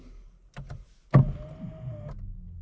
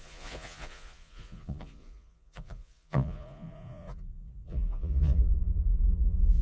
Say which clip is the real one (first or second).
first